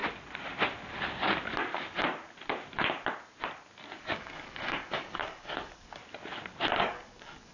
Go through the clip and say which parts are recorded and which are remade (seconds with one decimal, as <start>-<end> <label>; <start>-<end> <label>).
0.0-4.0 recorded; 4.0-6.0 remade; 6.0-6.8 recorded; 6.8-7.5 remade